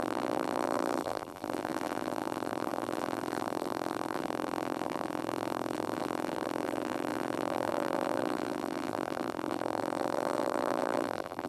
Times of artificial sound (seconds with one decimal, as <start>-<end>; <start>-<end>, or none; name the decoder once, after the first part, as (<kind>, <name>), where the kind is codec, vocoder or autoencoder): 0.0-11.5 (vocoder, BigVGAN v2)